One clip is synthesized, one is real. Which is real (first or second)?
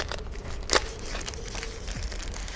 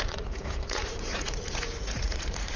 first